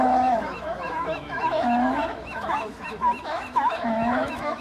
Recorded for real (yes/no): no